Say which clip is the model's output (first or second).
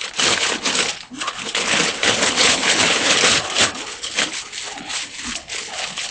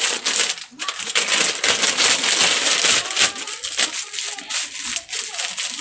first